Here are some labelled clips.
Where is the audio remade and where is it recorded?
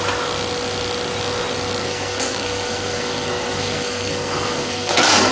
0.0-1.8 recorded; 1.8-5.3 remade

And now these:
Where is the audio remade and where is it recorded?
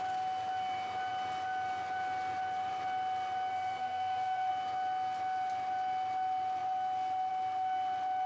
0.0-3.5 recorded; 3.5-4.5 remade; 4.5-8.3 recorded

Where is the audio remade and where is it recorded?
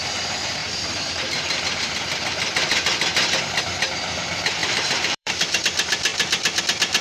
0.0-0.6 recorded; 0.6-1.9 remade; 1.9-4.6 recorded; 4.6-5.6 remade; 5.6-7.0 recorded